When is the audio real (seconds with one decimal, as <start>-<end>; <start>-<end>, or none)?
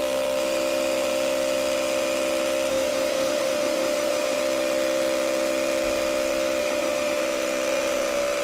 0.0-2.7; 4.4-6.6; 7.2-8.4